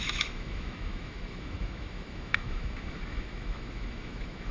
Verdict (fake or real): fake